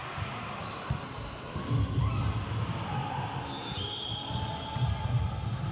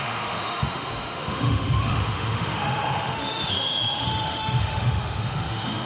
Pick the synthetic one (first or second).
second